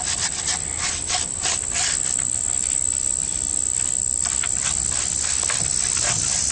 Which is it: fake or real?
real